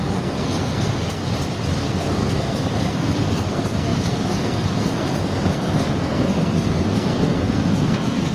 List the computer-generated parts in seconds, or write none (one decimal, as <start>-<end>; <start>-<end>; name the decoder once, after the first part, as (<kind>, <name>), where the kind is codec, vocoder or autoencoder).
0.0-1.2 (codec, SNAC); 1.8-8.3